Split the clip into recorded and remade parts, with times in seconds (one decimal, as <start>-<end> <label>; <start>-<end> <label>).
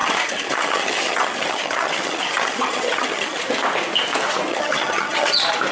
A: 0.0-3.4 remade; 3.4-4.5 recorded; 4.5-5.3 remade; 5.3-5.7 recorded